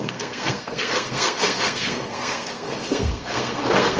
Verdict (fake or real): fake